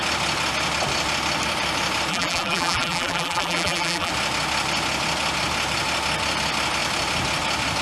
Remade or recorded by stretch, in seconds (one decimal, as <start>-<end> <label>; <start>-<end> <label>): 0.0-2.1 recorded; 2.1-4.1 remade; 4.1-7.8 recorded